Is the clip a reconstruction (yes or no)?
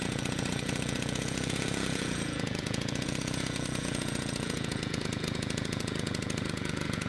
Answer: yes